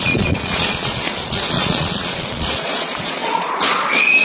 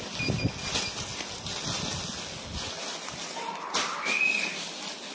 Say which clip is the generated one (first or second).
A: first